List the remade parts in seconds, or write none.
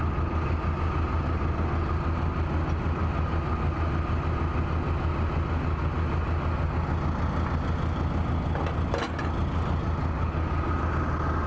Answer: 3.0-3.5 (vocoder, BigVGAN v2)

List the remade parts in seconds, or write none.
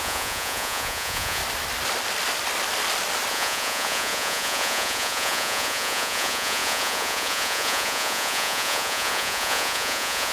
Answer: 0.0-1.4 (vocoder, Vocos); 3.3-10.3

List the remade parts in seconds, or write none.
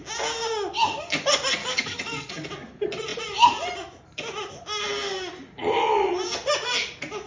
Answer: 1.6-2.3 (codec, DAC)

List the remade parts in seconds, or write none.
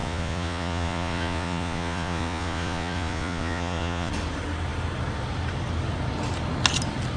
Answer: 0.0-4.1 (vocoder, Vocos)